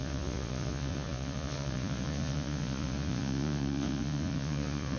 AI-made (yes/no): yes